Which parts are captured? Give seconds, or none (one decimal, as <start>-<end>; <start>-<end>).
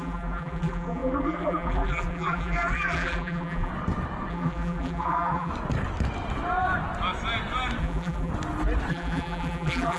3.7-4.3; 5.5-7.8; 8.3-8.9